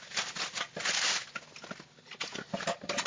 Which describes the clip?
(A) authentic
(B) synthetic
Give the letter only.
A